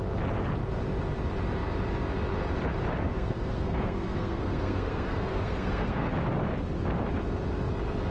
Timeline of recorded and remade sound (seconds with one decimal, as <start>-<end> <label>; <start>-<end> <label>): 0.0-3.1 recorded; 3.1-6.1 remade; 6.1-8.1 recorded